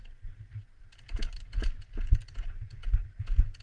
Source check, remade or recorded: recorded